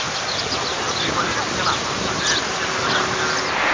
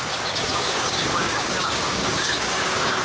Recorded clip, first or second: first